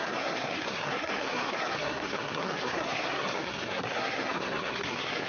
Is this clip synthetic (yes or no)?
yes